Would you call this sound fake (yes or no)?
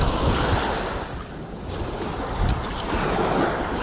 no